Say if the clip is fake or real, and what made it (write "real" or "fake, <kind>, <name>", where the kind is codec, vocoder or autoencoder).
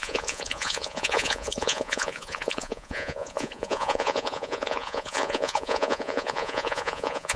fake, vocoder, Vocos